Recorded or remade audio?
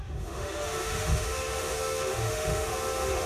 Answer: remade